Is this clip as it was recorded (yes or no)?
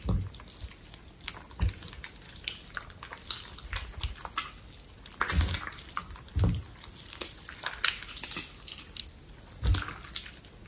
yes